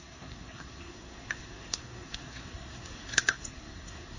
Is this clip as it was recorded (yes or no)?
no